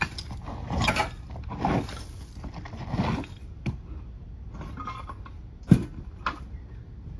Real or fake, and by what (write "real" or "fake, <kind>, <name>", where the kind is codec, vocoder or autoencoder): real